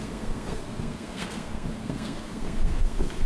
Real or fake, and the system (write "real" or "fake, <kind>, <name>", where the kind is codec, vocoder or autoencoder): fake, codec, SNAC